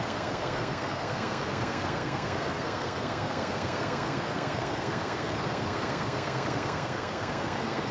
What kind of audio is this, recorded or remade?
remade